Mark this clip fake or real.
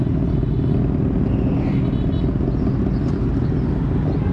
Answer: real